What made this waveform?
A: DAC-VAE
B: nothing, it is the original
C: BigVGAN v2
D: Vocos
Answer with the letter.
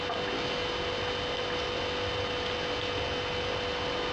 B